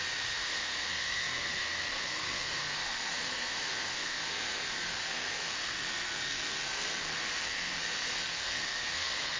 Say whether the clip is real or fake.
fake